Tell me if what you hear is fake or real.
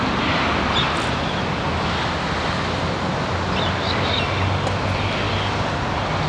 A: real